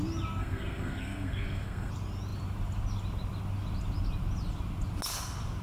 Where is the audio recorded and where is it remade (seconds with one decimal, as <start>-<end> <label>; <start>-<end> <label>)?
0.0-0.4 recorded; 0.4-1.9 remade; 1.9-5.6 recorded

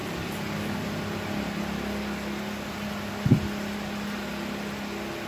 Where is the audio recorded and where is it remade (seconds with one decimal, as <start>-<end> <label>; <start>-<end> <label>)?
0.0-5.3 recorded

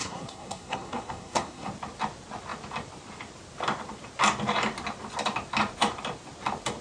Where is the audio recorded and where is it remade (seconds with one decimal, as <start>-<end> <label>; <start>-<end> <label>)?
0.0-1.7 remade; 1.7-6.8 recorded

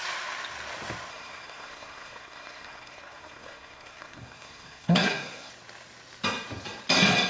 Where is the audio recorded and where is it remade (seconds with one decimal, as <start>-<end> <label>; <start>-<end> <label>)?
0.0-1.1 recorded; 1.1-5.5 remade; 5.5-7.3 recorded